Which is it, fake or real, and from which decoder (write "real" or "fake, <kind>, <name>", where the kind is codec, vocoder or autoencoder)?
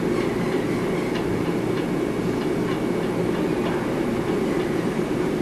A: real